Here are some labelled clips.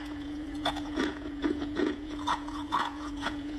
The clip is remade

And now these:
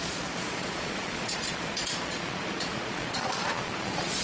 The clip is remade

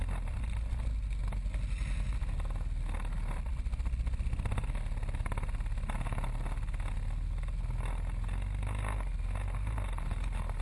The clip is recorded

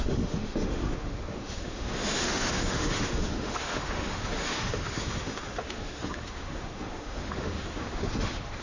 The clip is remade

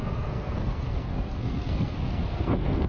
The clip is remade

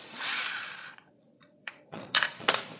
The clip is remade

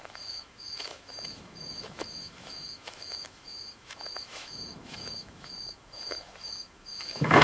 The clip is remade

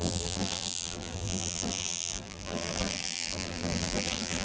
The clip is remade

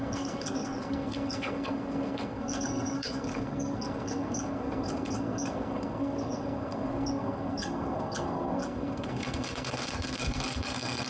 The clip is remade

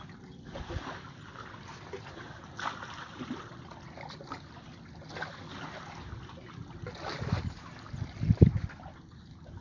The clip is recorded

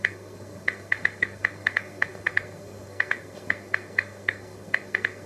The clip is remade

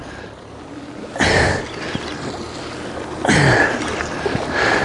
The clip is recorded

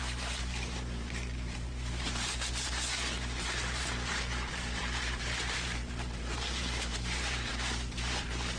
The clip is remade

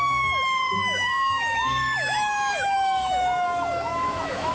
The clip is remade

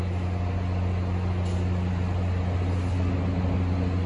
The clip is recorded